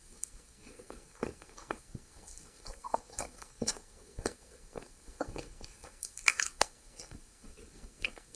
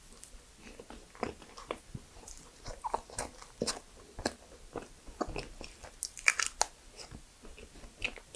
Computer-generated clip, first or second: first